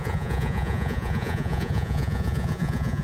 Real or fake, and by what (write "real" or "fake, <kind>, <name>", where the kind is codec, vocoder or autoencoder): fake, vocoder, Vocos